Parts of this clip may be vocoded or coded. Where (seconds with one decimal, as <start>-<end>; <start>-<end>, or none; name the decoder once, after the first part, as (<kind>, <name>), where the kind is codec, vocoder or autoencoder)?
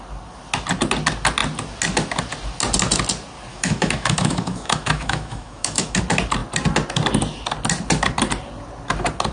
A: 3.5-6.0 (autoencoder, DAC-VAE)